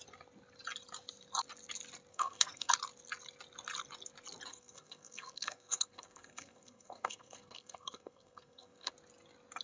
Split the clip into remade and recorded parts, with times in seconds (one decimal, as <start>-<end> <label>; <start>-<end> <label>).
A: 0.0-2.1 recorded; 2.1-2.7 remade; 2.7-4.5 recorded; 4.5-8.9 remade; 8.9-9.6 recorded